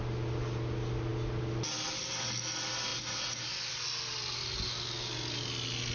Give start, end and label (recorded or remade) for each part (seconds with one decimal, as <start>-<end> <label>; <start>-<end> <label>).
0.0-5.9 recorded